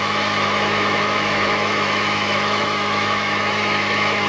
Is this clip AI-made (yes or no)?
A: yes